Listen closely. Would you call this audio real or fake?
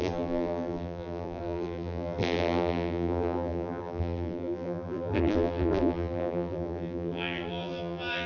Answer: fake